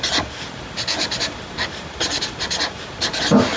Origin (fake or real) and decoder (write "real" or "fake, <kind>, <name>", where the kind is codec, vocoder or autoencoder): real